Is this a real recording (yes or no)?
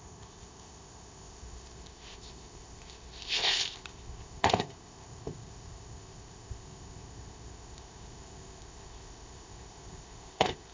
no